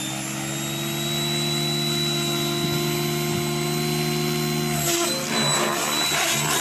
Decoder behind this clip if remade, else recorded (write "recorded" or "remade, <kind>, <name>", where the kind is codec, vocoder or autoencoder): recorded